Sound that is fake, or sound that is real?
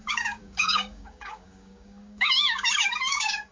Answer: fake